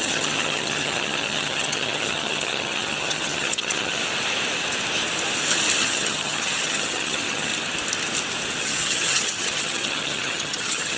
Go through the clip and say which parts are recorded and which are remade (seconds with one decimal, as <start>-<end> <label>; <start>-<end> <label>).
0.0-4.0 remade; 4.0-5.8 recorded; 5.8-7.5 remade; 7.5-8.6 recorded; 8.6-11.0 remade